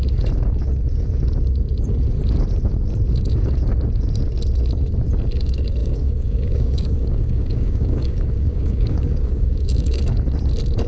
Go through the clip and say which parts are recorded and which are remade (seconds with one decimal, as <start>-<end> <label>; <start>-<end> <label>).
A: 0.0-5.8 recorded; 5.8-10.0 remade; 10.0-10.9 recorded